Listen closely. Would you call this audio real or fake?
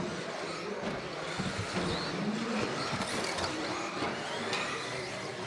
real